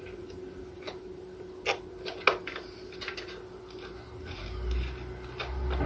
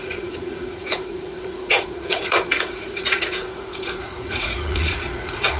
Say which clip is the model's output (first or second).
second